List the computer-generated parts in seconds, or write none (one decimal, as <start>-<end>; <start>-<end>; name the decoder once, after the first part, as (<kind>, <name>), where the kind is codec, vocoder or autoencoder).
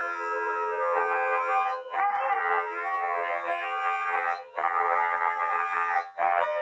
0.0-2.0 (vocoder, HiFi-GAN); 2.4-6.6